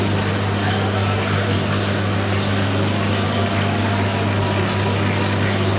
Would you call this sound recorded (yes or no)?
yes